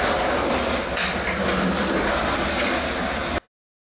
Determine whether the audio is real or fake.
real